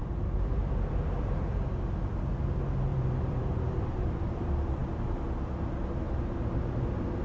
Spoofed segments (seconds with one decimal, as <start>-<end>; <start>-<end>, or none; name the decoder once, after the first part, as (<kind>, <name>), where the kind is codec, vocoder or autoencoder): 0.0-2.3 (vocoder, BigVGAN v2); 2.9-4.1